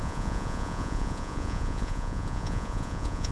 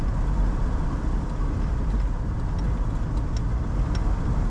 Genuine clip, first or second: second